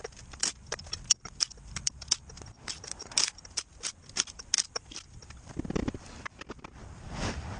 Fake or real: real